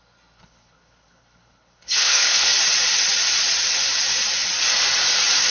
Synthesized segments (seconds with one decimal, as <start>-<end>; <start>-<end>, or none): 0.4-2.5